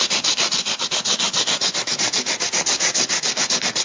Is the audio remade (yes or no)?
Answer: no